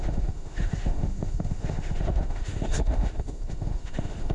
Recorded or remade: remade